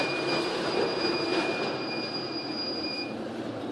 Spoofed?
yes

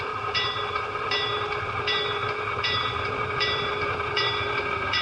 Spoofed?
yes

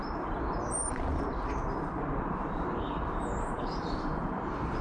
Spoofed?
yes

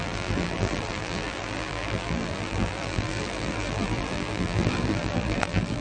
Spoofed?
yes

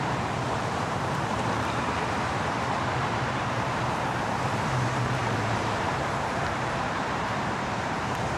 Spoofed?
yes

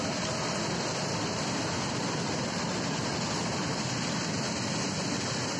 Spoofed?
yes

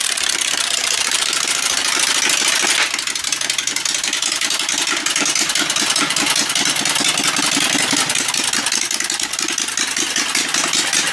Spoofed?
no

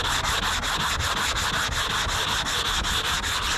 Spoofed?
no